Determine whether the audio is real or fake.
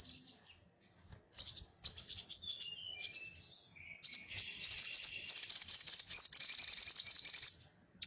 real